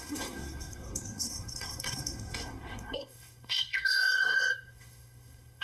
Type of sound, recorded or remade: remade